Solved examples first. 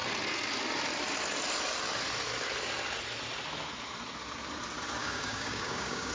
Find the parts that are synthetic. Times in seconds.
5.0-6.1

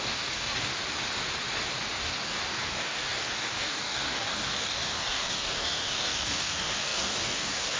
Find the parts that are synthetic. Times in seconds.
0.0-0.7; 2.0-7.8

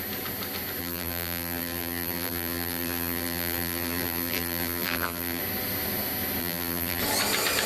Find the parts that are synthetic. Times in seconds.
0.8-5.4; 6.4-7.0

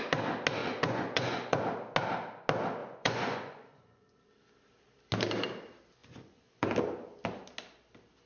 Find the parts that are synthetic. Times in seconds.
0.6-1.6; 2.8-4.2; 6.0-6.7

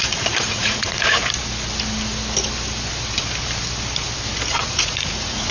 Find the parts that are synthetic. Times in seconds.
0.0-1.2; 4.5-5.5

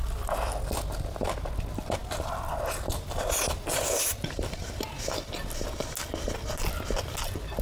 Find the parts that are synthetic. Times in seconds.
none

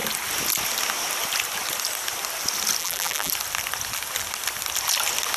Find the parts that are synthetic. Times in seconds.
2.8-3.3

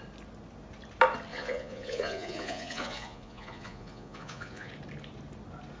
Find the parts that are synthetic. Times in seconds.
1.3-4.7